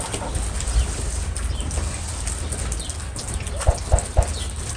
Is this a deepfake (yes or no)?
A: no